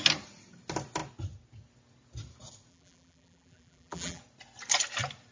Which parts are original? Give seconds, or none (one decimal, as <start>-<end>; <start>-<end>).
0.0-2.7; 4.2-5.3